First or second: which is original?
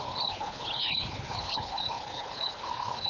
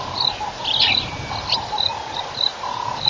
second